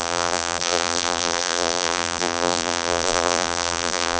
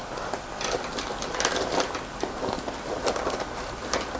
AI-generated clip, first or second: first